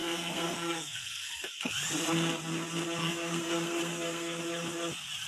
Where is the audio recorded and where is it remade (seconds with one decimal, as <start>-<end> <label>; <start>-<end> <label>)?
0.0-1.7 remade; 1.7-3.0 recorded; 3.0-4.4 remade; 4.4-5.3 recorded